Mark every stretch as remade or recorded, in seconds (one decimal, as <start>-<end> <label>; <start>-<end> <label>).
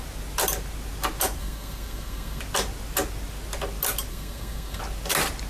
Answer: 0.0-1.4 recorded; 1.4-2.4 remade; 2.4-4.1 recorded; 4.1-4.8 remade; 4.8-5.5 recorded